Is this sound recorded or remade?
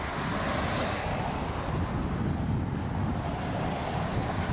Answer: recorded